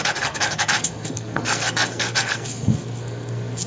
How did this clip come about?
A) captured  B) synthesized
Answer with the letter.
B